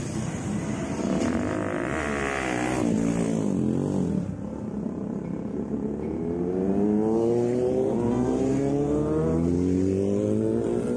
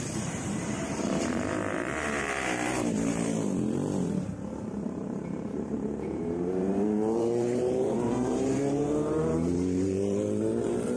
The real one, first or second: first